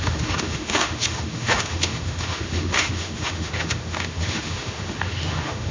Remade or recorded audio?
remade